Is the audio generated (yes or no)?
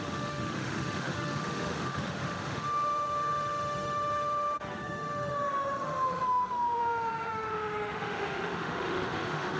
yes